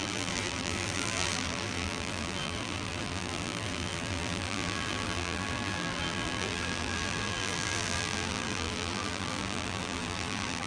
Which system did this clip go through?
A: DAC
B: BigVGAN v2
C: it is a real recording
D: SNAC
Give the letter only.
B